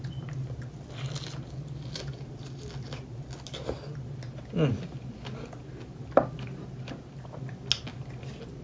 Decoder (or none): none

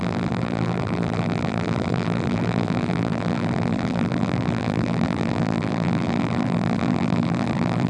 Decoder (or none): vocoder, BigVGAN v2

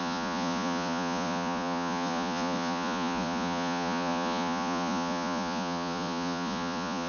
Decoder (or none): vocoder, Vocos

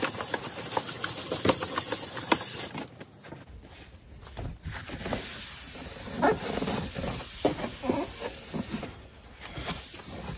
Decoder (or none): none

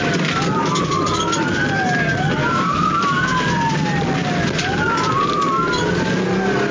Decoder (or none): none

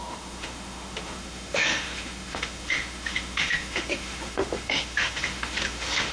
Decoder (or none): autoencoder, DAC-VAE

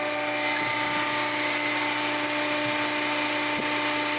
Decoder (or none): none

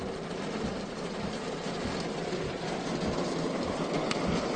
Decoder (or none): none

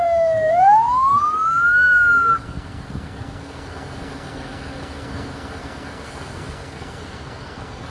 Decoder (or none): codec, SNAC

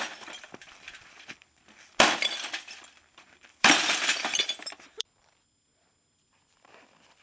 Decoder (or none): vocoder, BigVGAN v2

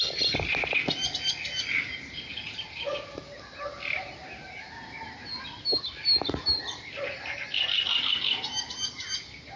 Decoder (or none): none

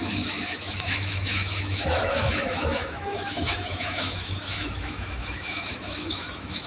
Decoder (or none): autoencoder, DAC-VAE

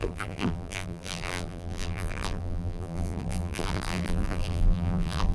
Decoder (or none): vocoder, BigVGAN v2